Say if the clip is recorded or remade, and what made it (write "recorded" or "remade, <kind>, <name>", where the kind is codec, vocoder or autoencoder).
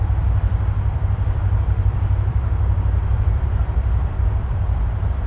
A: remade, vocoder, BigVGAN v2